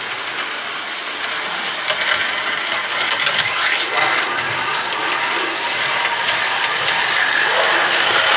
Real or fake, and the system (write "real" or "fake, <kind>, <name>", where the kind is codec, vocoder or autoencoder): real